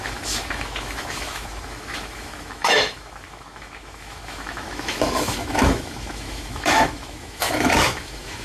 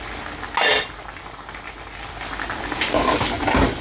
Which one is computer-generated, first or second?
first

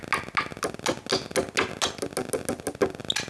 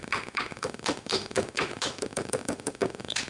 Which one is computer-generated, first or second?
second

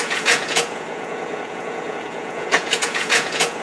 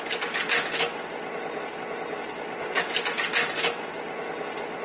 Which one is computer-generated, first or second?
first